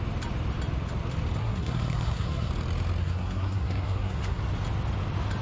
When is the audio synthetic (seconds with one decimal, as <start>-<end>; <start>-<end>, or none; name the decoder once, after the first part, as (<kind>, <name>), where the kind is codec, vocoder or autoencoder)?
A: 1.4-2.5 (codec, SNAC); 3.0-4.4